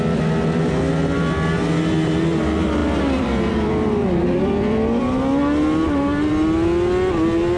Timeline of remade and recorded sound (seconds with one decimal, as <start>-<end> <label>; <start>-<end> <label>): 0.0-2.8 recorded; 2.8-5.0 remade; 5.0-7.6 recorded